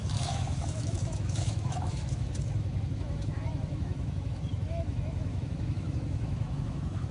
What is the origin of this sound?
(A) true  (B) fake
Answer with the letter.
B